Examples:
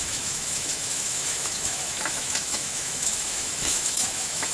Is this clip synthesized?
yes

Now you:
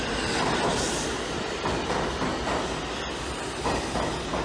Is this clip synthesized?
no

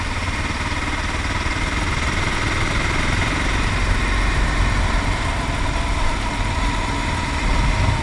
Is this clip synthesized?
no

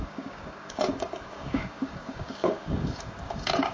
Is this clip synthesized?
yes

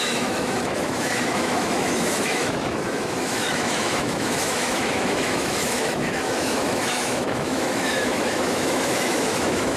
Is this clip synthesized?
yes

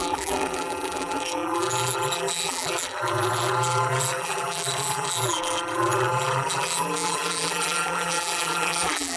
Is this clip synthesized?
yes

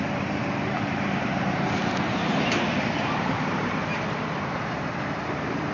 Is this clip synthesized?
yes